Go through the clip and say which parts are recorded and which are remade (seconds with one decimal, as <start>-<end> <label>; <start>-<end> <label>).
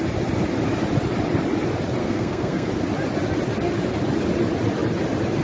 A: 0.0-2.0 recorded; 2.0-2.7 remade; 2.7-5.4 recorded